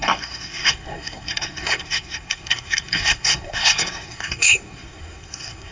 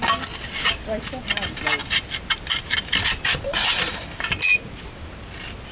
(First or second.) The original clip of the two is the second